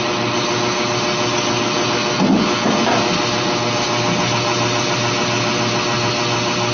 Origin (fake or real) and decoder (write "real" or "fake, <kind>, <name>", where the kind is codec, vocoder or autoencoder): real